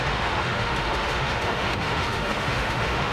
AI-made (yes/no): yes